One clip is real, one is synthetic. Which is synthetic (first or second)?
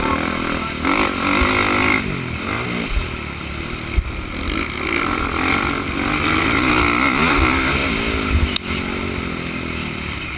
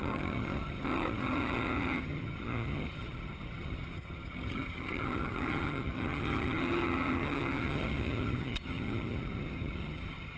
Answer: second